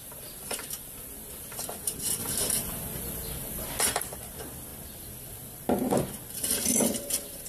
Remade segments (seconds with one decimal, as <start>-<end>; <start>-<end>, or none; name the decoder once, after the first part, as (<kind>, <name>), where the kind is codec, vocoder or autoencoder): 0.0-2.2 (vocoder, BigVGAN v2); 3.8-4.7; 7.1-7.5